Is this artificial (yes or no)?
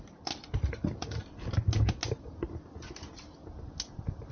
no